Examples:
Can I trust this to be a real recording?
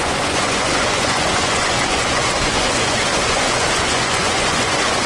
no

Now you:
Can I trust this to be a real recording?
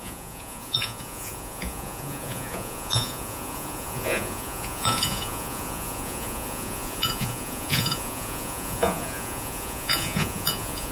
no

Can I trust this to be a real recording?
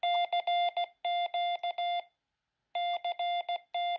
yes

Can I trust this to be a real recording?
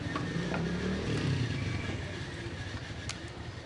yes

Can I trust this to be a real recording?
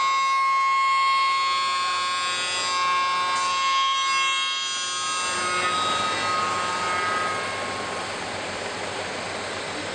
yes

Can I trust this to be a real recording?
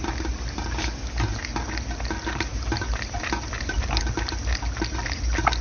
yes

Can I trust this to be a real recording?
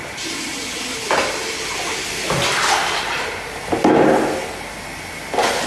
yes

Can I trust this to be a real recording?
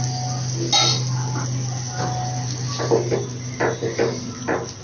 yes